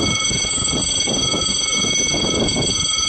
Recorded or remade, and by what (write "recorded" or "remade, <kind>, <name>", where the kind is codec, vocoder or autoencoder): remade, autoencoder, DAC-VAE